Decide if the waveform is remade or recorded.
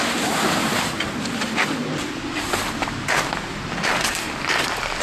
recorded